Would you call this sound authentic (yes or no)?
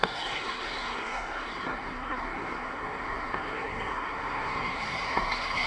no